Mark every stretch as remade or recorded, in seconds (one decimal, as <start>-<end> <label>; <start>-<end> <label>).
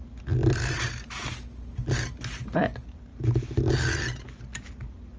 0.0-5.2 recorded